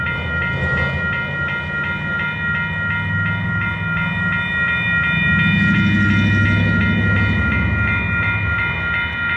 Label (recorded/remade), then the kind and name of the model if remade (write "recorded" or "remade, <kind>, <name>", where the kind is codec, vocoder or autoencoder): recorded